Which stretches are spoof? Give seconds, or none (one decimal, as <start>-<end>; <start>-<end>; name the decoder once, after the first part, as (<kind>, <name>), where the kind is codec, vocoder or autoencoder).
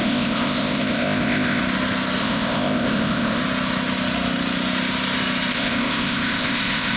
0.0-1.6 (codec, ZipCodec); 2.2-3.4; 5.5-7.0